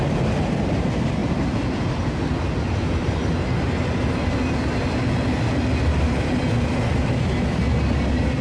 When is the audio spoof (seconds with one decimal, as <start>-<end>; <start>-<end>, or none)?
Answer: none